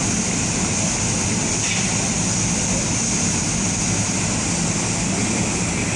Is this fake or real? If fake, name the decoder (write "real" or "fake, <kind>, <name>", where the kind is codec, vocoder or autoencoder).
real